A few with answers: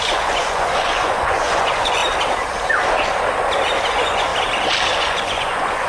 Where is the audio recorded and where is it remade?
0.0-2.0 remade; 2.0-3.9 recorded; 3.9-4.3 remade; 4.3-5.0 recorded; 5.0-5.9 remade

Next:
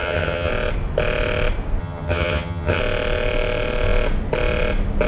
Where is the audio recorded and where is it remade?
0.0-0.5 remade; 0.5-1.8 recorded; 1.8-2.8 remade; 2.8-5.1 recorded

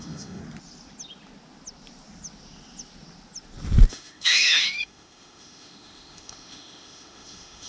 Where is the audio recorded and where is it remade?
0.0-0.4 remade; 0.4-3.9 recorded; 3.9-7.7 remade

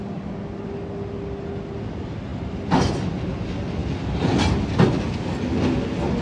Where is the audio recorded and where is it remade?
0.0-6.2 recorded

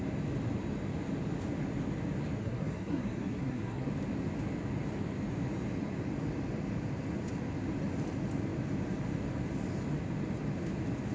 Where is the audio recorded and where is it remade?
0.0-2.4 recorded; 2.4-3.9 remade; 3.9-11.1 recorded

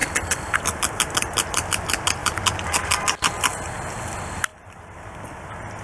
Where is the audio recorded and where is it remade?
0.0-5.8 recorded

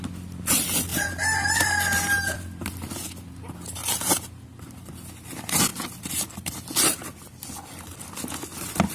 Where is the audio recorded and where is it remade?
0.0-8.9 recorded